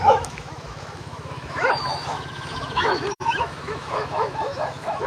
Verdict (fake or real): fake